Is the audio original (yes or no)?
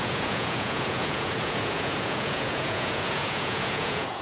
no